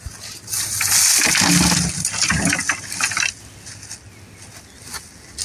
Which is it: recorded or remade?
recorded